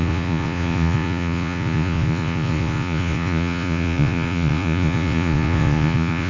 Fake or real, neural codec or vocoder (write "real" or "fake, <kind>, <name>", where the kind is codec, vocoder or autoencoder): fake, vocoder, Vocos